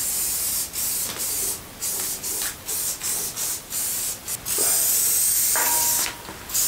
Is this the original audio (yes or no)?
yes